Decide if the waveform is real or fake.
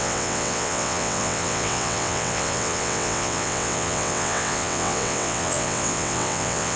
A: fake